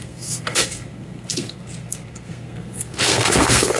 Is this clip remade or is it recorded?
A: remade